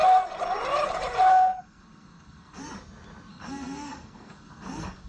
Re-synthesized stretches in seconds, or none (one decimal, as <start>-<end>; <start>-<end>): 1.3-2.6; 3.3-5.1